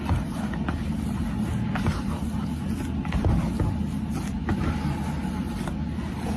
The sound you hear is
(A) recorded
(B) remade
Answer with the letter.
A